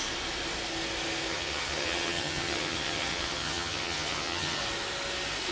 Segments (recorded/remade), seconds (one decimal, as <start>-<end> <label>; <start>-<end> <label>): 0.0-1.3 recorded; 1.3-4.6 remade; 4.6-5.5 recorded